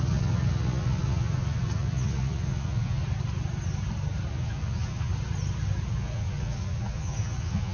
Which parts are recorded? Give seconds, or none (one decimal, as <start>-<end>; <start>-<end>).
3.0-4.3; 5.1-5.9